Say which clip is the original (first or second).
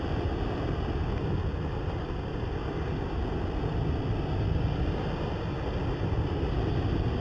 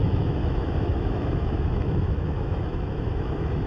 first